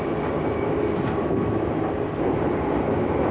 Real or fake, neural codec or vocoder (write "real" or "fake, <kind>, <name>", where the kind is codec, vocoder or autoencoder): real